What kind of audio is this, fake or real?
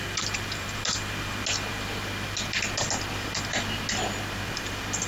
real